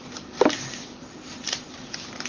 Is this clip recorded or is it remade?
recorded